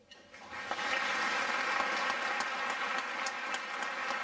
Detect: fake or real real